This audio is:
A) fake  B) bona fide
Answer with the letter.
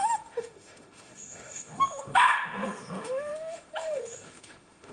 A